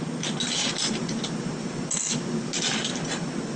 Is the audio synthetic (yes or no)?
no